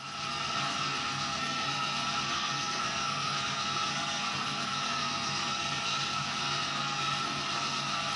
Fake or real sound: fake